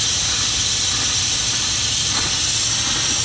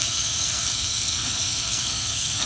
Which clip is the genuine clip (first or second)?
first